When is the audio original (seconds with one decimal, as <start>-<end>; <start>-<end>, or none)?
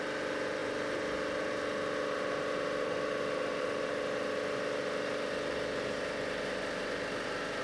0.0-7.6